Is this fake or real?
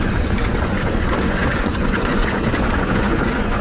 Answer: fake